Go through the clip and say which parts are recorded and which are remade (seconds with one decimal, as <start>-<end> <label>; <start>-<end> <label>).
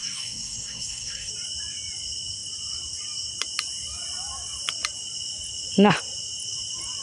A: 0.0-1.3 remade; 1.3-7.0 recorded